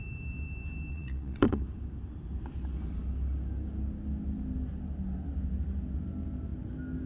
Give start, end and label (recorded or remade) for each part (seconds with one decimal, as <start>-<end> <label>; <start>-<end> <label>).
0.0-0.9 recorded; 0.9-1.6 remade; 1.6-7.1 recorded